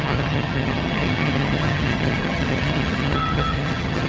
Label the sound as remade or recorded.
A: remade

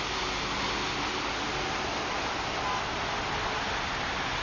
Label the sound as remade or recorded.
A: recorded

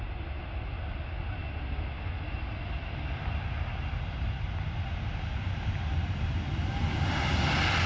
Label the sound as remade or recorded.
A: recorded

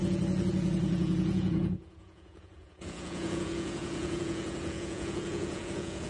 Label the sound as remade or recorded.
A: remade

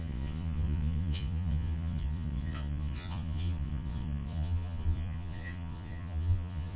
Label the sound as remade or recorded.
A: remade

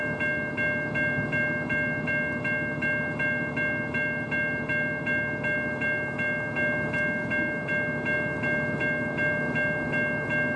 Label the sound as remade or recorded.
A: recorded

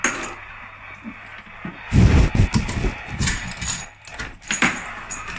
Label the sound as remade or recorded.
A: recorded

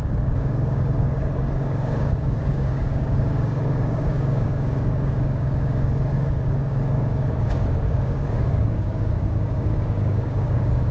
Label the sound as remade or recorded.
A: remade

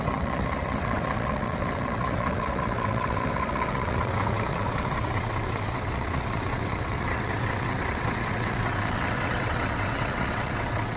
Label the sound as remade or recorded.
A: remade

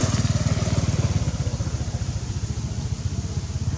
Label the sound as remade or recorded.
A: recorded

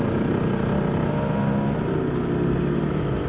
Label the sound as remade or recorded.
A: recorded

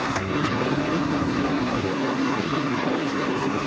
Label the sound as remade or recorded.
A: remade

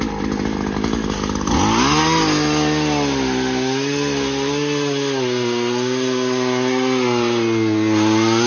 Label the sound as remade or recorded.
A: recorded